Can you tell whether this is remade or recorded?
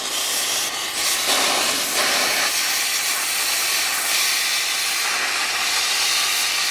recorded